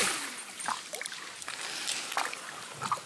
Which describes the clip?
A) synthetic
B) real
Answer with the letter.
B